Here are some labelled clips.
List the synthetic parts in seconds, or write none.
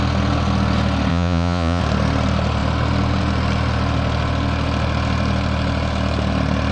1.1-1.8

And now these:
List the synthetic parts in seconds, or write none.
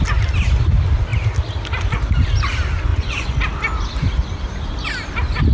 2.9-3.4